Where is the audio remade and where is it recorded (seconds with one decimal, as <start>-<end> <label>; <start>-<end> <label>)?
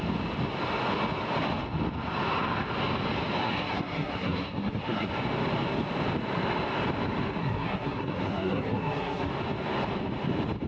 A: 0.0-3.4 recorded; 3.4-5.1 remade; 5.1-7.4 recorded; 7.4-9.3 remade; 9.3-10.7 recorded